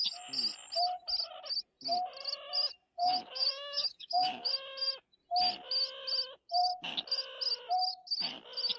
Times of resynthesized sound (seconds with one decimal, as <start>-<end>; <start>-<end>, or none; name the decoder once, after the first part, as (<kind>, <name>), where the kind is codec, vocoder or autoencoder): 3.0-4.5 (codec, DAC)